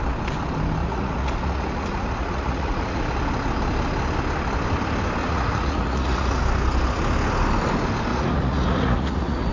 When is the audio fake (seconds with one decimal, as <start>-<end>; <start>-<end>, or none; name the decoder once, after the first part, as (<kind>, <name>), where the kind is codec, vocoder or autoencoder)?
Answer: 0.8-3.0 (vocoder, Vocos); 5.2-6.4; 8.1-9.5